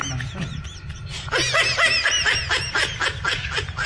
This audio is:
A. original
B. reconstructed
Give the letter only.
A